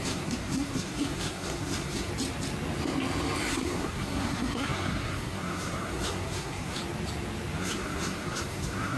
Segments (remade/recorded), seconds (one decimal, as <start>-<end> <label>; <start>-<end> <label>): 0.0-2.1 remade; 2.1-3.5 recorded; 3.5-6.8 remade; 6.8-7.6 recorded; 7.6-9.0 remade